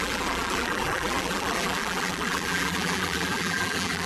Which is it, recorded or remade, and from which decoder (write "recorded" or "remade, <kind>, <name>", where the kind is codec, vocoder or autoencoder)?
remade, vocoder, BigVGAN v2